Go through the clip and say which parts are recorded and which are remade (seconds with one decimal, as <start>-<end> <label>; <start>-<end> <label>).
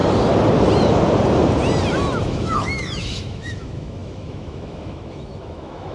0.0-2.2 recorded; 2.2-5.9 remade